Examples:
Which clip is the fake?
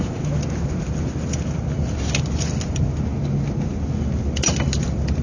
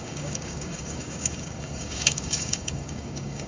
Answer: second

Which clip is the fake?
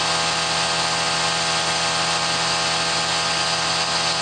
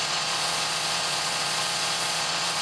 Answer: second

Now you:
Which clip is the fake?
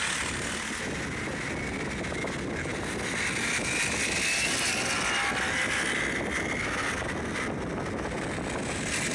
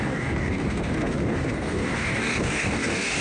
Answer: second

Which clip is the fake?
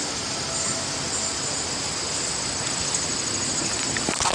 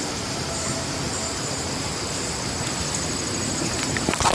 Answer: second